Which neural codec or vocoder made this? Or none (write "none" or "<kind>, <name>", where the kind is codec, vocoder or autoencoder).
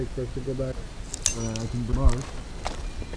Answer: none